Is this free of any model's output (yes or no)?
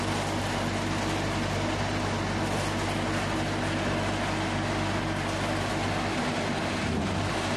yes